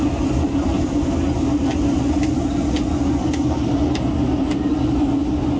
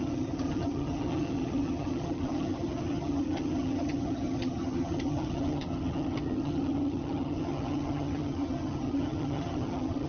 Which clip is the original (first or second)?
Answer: first